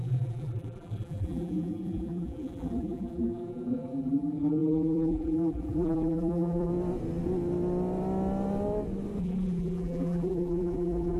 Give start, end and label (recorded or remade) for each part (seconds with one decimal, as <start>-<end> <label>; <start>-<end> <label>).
0.0-6.7 remade; 6.7-9.2 recorded; 9.2-11.2 remade